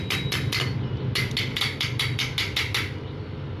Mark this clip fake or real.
real